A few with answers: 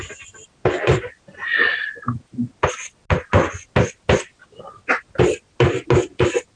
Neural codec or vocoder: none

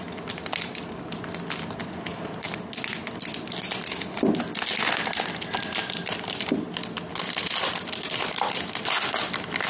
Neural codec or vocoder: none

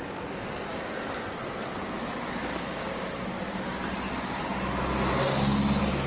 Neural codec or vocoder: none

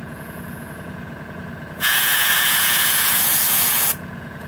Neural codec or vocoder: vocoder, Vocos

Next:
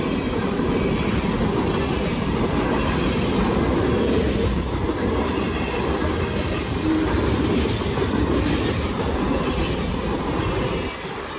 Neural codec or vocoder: none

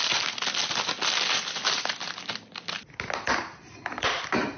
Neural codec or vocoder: none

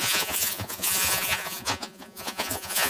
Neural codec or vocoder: vocoder, Vocos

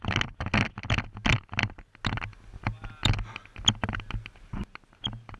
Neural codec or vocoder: none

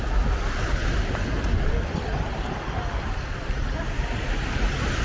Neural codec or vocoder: none